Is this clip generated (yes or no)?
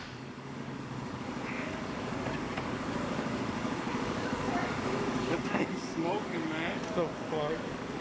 yes